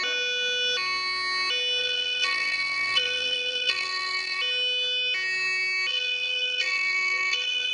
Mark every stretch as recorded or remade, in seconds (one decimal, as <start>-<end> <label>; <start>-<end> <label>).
0.0-1.8 recorded; 1.8-4.4 remade; 4.4-5.9 recorded; 5.9-7.7 remade